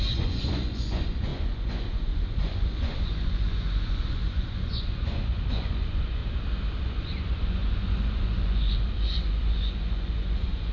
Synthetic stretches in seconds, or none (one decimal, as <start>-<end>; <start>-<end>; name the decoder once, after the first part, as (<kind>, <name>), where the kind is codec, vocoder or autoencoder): 0.0-6.2 (vocoder, Vocos); 6.8-10.7